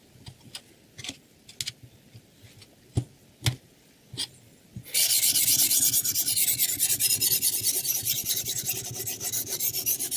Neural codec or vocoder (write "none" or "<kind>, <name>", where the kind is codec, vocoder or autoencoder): none